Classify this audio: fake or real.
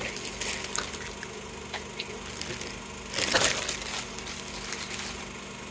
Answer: real